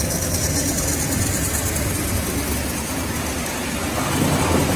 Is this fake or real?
real